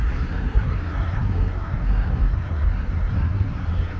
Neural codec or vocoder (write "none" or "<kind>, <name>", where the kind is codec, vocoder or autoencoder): codec, SNAC